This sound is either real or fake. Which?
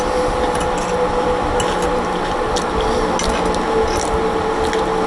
real